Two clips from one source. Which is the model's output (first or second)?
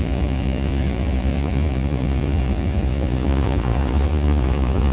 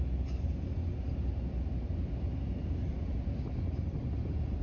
first